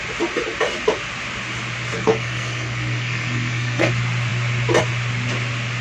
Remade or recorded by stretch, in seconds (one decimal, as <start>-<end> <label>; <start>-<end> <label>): 0.0-1.9 recorded; 1.9-3.9 remade; 3.9-5.8 recorded